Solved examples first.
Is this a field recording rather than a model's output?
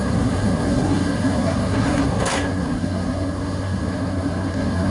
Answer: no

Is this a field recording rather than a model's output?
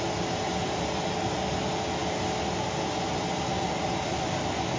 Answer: yes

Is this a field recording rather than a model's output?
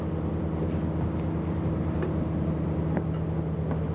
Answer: yes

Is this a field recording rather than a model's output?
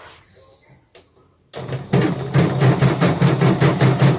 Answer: yes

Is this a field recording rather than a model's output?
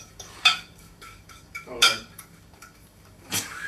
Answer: no